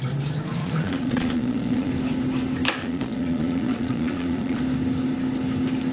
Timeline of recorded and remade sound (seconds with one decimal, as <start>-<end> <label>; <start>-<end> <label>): 0.0-0.6 recorded; 0.6-1.9 remade; 1.9-2.8 recorded; 2.8-4.6 remade; 4.6-5.9 recorded